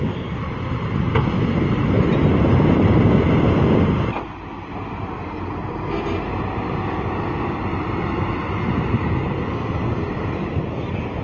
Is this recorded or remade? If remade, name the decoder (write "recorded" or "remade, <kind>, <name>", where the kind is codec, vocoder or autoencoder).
recorded